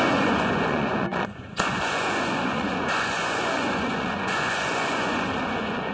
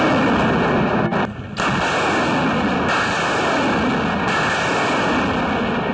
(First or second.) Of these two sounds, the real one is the second